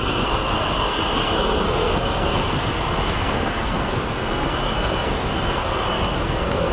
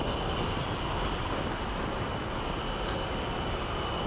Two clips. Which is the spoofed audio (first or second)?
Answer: first